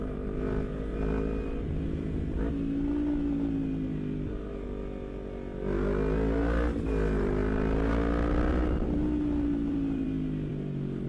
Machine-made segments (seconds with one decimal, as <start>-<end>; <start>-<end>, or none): 9.7-10.5

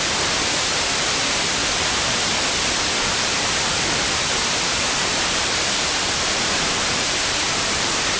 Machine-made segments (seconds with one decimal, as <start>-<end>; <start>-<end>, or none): 0.0-8.2

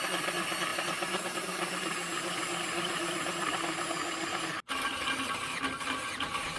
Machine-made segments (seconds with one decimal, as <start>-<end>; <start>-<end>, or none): 0.7-4.7

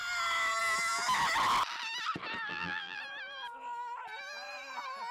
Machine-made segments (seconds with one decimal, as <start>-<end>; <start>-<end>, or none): 2.5-3.0

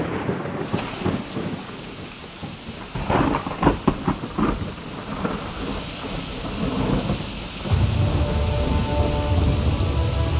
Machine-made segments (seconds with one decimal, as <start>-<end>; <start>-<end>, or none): 2.4-7.3